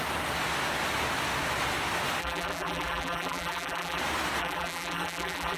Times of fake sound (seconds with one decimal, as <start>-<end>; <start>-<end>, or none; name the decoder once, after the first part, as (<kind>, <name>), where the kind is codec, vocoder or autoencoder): 2.2-4.0 (vocoder, BigVGAN v2); 4.4-5.6